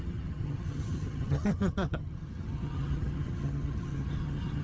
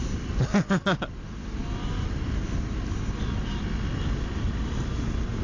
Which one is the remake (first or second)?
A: first